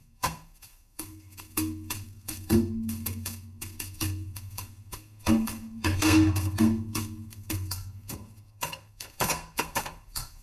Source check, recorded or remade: remade